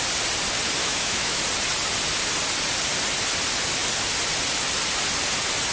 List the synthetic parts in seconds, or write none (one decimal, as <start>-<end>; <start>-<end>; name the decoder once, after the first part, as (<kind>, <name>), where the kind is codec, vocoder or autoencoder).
0.8-1.4 (autoencoder, DAC-VAE)